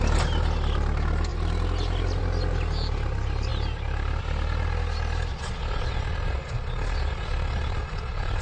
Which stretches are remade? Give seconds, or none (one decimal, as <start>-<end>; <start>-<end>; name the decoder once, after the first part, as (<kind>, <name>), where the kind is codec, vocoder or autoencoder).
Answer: 5.3-8.4 (vocoder, Vocos)